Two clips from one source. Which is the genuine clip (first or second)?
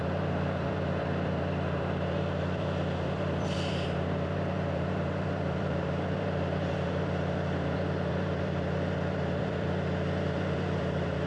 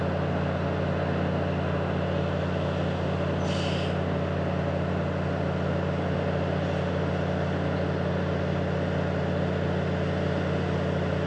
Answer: second